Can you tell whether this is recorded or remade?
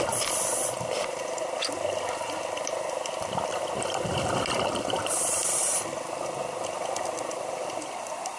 recorded